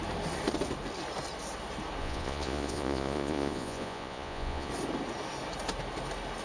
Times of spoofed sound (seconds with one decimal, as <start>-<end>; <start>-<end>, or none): 2.0-4.7